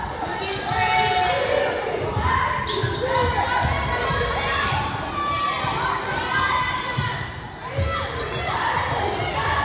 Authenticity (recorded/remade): recorded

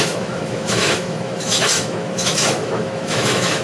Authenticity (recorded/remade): remade